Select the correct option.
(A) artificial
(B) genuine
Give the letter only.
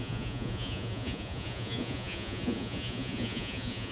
A